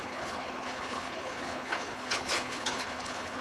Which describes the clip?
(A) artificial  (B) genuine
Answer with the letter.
A